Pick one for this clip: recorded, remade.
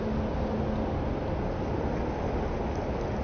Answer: recorded